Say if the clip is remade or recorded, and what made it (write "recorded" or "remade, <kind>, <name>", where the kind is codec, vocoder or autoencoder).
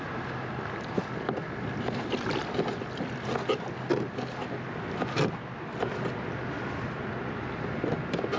recorded